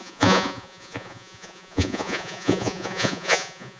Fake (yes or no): yes